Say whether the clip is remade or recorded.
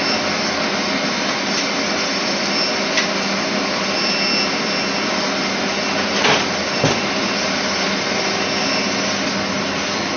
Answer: recorded